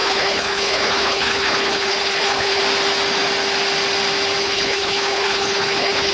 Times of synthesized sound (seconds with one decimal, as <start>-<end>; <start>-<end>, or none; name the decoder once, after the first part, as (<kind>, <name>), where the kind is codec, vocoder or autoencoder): 0.0-2.6 (codec, HILCodec); 4.4-6.1